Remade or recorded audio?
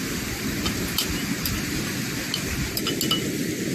recorded